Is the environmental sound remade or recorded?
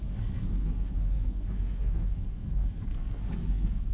remade